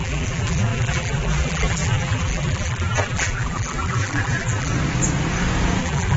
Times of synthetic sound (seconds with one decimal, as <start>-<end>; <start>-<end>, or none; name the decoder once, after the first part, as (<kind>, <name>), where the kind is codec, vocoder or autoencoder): 0.0-4.7 (vocoder, BigVGAN v2); 5.8-6.2